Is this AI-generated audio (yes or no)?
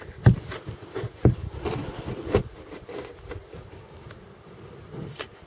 yes